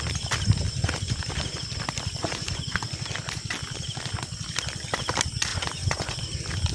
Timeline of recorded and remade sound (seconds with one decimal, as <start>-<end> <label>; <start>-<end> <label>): 0.0-2.2 recorded; 2.2-2.9 remade; 2.9-5.5 recorded; 5.5-6.2 remade; 6.2-6.7 recorded